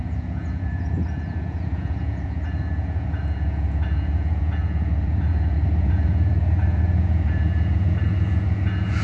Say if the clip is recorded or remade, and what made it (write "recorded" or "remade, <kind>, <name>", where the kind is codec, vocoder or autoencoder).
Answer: remade, vocoder, Vocos